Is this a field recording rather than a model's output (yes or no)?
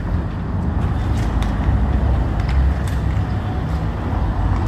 yes